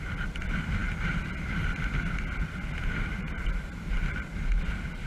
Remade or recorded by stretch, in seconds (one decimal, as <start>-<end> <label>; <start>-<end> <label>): 0.0-5.1 recorded